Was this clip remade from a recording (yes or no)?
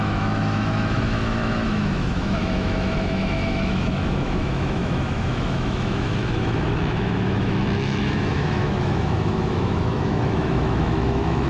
yes